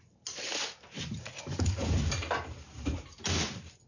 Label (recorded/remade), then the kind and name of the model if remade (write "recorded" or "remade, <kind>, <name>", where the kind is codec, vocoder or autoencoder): recorded